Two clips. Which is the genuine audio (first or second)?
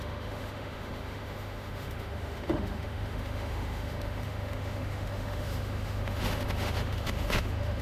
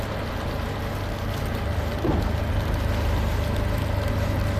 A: second